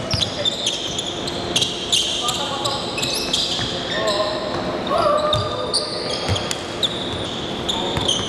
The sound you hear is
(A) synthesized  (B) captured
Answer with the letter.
B